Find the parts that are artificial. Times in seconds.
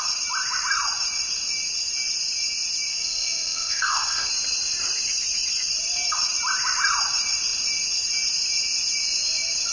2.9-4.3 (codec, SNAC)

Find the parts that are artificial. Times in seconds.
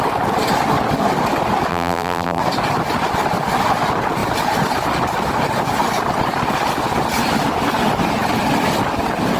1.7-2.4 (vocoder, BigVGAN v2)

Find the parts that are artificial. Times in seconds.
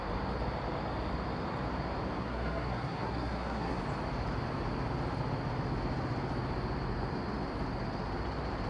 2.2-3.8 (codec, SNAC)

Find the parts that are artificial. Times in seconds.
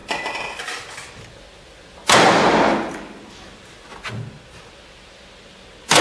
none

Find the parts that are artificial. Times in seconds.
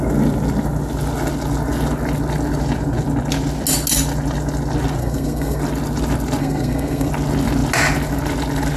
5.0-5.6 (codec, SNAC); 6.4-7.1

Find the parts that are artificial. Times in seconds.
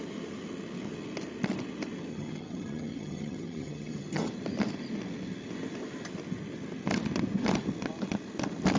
2.1-4.3 (vocoder, HiFi-GAN)